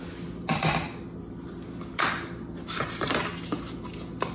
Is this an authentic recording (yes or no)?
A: yes